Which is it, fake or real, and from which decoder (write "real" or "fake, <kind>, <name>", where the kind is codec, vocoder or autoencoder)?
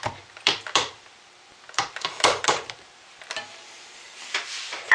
fake, vocoder, BigVGAN v2